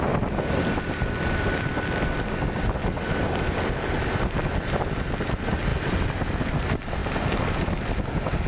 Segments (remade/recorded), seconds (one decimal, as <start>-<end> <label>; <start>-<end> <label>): 0.0-5.7 recorded; 5.7-6.5 remade; 6.5-8.5 recorded